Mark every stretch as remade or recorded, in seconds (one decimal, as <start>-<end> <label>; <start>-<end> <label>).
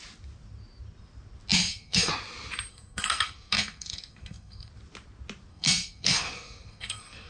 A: 0.0-1.6 recorded; 1.6-2.1 remade; 2.1-2.7 recorded; 2.7-4.7 remade; 4.7-5.5 recorded; 5.5-7.3 remade